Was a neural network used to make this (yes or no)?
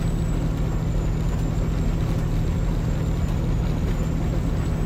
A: no